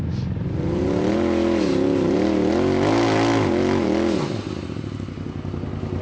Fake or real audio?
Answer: real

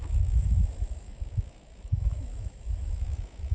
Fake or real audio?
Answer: fake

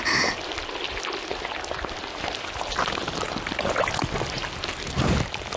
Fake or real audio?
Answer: real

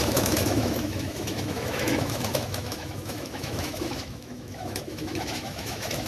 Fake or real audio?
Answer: fake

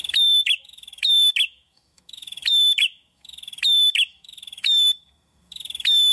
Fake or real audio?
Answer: fake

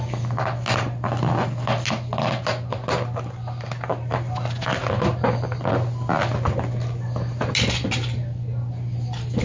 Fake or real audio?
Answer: real